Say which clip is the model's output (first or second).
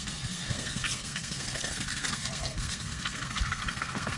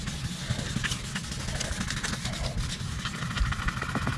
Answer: first